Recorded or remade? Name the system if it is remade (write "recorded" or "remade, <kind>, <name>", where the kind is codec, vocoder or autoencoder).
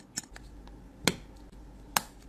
recorded